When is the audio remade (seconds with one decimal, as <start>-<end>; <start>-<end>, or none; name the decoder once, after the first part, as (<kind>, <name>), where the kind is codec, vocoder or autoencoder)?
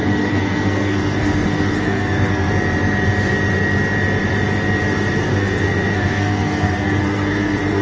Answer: 0.0-2.5 (codec, SNAC); 5.3-7.8